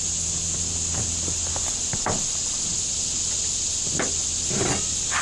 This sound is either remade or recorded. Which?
recorded